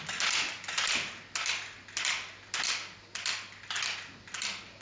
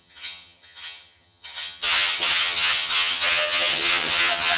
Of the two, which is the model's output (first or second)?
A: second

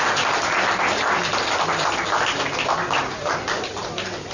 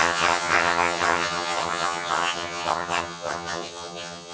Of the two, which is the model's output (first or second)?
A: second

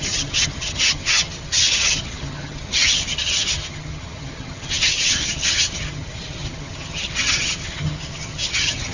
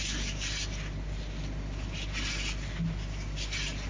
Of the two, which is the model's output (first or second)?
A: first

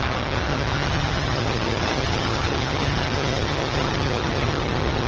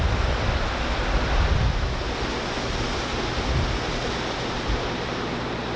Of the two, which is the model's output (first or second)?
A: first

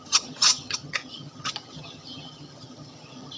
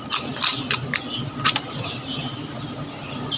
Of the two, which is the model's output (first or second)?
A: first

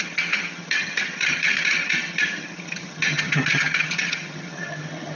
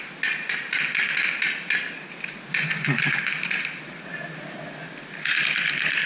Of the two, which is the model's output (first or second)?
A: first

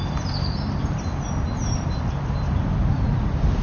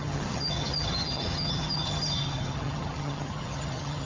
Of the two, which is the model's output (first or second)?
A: second